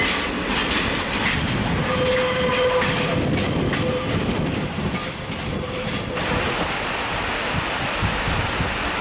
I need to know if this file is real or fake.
real